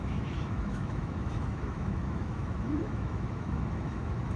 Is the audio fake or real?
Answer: fake